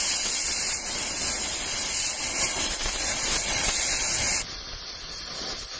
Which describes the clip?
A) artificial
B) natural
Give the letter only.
B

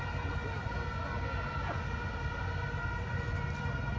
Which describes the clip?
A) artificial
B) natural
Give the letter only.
B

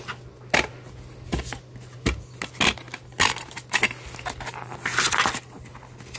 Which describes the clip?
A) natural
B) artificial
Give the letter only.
A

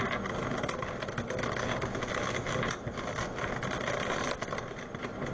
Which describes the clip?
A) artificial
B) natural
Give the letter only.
B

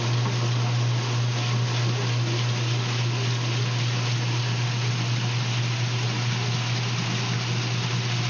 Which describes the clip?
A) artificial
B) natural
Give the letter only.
B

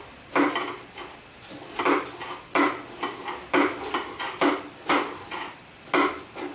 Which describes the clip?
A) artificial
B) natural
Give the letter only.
B